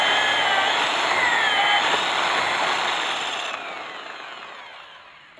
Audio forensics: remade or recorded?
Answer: recorded